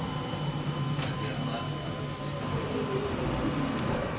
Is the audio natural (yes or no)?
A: yes